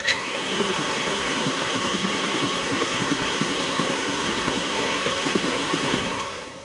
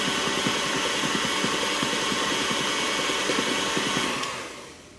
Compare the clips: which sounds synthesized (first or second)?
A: first